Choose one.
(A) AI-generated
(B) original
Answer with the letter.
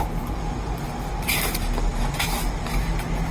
B